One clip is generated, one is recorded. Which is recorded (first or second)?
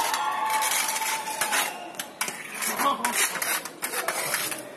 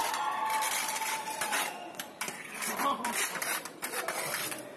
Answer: first